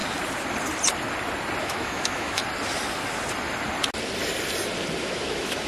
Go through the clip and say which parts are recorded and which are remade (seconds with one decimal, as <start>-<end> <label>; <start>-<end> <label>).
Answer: 0.0-1.6 recorded; 1.6-2.4 remade; 2.4-5.0 recorded; 5.0-5.7 remade